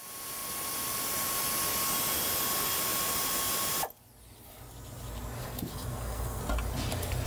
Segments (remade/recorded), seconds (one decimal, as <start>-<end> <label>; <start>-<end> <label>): 0.0-5.4 recorded; 5.4-6.4 remade; 6.4-7.3 recorded